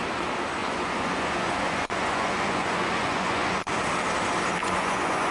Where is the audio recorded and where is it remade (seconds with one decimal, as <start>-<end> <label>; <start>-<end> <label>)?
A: 0.0-0.6 recorded; 0.6-3.8 remade; 3.8-4.6 recorded; 4.6-5.3 remade